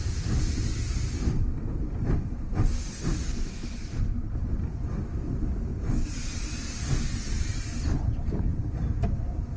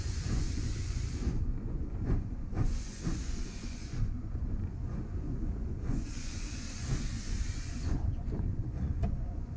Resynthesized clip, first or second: second